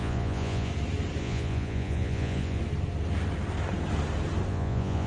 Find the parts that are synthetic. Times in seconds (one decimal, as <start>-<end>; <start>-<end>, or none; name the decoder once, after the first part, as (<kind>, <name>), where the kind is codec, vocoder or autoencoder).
0.0-0.7 (vocoder, Vocos); 1.2-2.6; 4.5-5.1